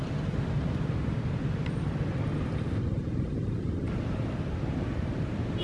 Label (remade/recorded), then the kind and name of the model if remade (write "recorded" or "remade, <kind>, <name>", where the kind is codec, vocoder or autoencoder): recorded